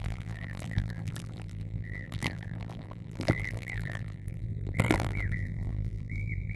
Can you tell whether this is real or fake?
fake